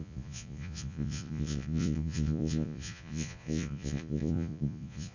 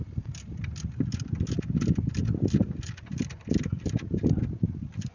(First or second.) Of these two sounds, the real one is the second